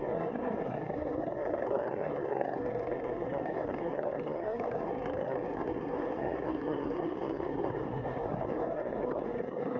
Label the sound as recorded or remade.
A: remade